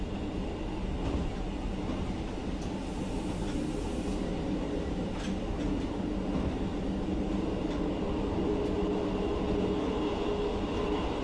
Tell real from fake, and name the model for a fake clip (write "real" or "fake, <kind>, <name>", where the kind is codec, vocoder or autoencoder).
real